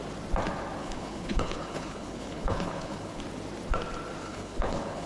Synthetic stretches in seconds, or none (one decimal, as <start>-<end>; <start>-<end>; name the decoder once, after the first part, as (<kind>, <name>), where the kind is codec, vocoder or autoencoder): 0.8-3.2 (codec, HILCodec); 4.2-5.1